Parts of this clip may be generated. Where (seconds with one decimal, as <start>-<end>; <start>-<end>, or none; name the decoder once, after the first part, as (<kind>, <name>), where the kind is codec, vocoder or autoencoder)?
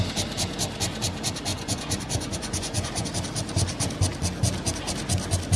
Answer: 1.5-3.1 (vocoder, Vocos)